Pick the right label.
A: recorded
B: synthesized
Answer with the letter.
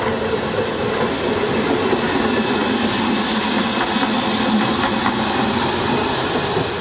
A